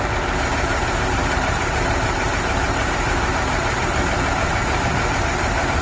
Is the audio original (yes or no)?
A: no